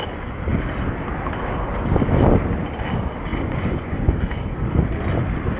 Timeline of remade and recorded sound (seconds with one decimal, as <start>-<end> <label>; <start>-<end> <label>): 0.0-3.3 recorded; 3.3-4.1 remade; 4.1-5.6 recorded